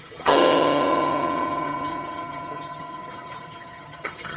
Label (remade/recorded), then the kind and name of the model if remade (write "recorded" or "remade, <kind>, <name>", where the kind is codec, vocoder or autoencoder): remade, vocoder, HiFi-GAN